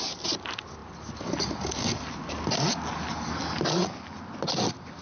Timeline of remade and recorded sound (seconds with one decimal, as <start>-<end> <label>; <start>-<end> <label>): 0.0-5.0 recorded